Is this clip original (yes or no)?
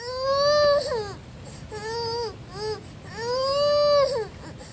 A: yes